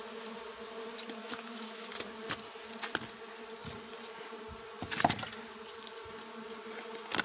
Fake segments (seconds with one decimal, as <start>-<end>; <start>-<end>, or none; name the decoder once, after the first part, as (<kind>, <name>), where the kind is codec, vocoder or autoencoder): 1.2-1.9 (autoencoder, DAC-VAE)